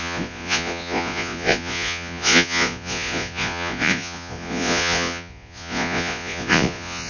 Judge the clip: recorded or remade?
remade